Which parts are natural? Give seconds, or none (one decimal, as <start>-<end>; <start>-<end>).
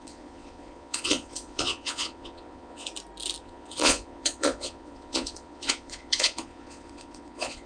2.9-3.4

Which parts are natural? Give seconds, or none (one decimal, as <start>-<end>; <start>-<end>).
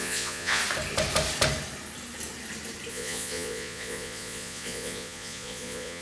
0.6-2.9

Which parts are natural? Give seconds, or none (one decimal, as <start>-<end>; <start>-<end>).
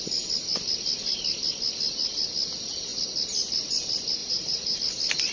0.0-4.2; 4.8-5.3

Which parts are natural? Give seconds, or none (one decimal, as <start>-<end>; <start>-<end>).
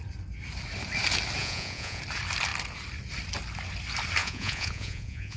0.0-1.4; 2.0-4.2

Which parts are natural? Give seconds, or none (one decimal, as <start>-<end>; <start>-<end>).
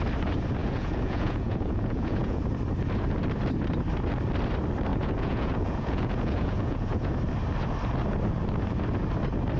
0.0-0.6; 2.4-4.9; 7.2-9.6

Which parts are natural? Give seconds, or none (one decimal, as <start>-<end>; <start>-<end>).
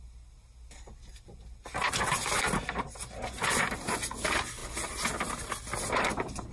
0.0-6.5